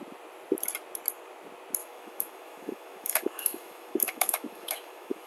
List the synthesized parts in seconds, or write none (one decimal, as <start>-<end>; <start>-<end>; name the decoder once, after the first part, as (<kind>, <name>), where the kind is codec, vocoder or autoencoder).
1.8-5.3 (autoencoder, DAC-VAE)